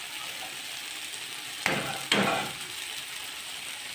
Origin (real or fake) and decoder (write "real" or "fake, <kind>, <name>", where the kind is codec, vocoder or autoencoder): real